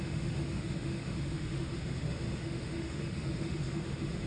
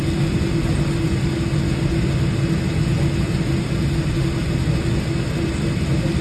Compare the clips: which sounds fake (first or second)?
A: first